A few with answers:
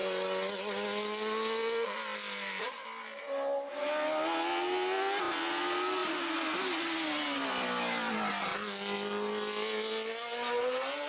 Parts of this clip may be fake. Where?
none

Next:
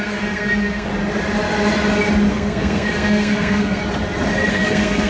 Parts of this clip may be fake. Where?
0.0-0.9 (codec, SNAC); 2.3-3.8; 4.5-5.1

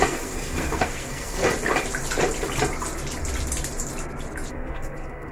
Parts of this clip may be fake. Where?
0.0-1.4 (codec, SNAC); 4.5-5.3

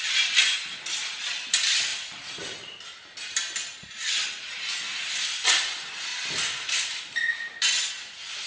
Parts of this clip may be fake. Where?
none